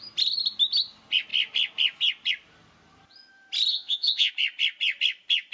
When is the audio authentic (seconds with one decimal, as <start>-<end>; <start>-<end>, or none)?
0.0-3.7; 4.3-5.5